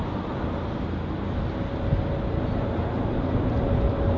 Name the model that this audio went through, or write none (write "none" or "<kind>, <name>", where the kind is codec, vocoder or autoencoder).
none